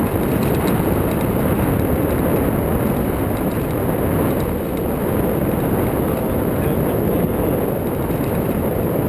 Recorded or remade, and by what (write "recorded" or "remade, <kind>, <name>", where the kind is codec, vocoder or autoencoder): recorded